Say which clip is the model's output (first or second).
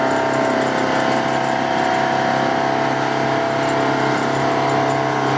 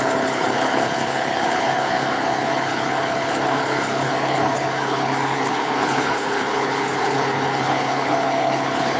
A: second